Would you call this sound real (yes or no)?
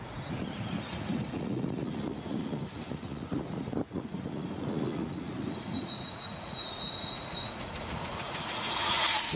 no